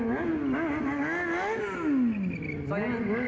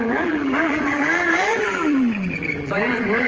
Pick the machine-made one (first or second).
second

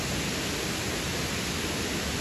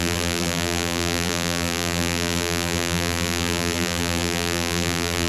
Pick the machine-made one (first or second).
second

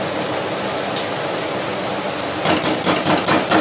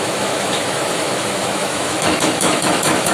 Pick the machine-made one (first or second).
second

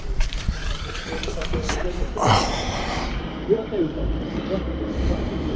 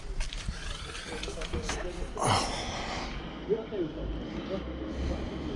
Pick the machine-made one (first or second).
first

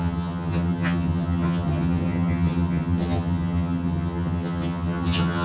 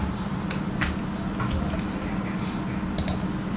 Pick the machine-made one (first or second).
first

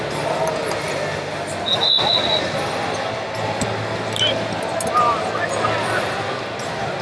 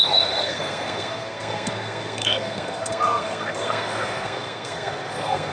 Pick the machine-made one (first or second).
second